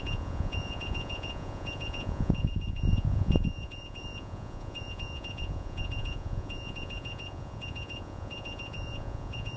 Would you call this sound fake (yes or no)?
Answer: yes